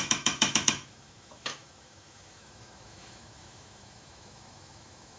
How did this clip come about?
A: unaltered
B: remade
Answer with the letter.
B